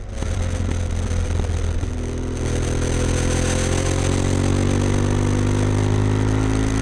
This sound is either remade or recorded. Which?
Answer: recorded